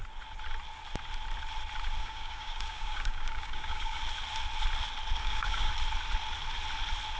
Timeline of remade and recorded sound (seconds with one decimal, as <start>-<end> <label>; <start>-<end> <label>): 0.0-2.0 recorded; 2.0-4.0 remade; 4.0-5.2 recorded; 5.2-5.7 remade; 5.7-7.2 recorded